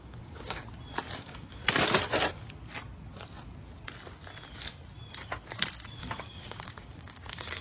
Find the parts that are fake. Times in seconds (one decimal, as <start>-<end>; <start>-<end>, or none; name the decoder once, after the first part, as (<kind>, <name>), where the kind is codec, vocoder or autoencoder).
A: 0.0-0.6 (codec, DAC); 1.2-1.6; 6.0-7.6